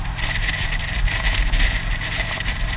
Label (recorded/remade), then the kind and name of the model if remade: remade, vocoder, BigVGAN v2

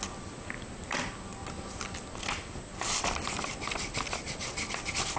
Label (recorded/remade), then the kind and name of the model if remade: recorded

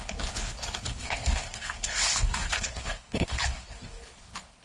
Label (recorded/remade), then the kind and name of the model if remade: remade, codec, HILCodec